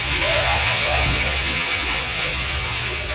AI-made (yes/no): yes